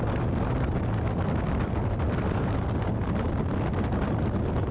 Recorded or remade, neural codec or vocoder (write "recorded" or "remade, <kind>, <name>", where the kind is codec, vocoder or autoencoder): recorded